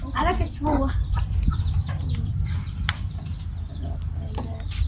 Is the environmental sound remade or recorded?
remade